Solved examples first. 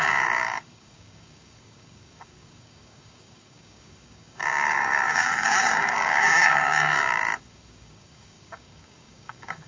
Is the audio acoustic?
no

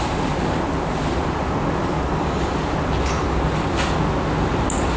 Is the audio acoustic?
yes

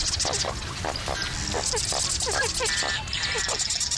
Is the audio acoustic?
yes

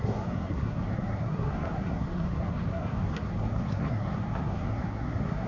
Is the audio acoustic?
no